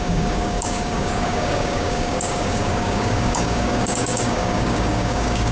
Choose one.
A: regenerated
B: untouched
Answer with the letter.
A